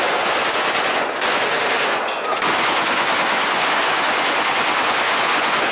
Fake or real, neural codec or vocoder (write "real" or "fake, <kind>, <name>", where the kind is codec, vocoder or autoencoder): fake, vocoder, Vocos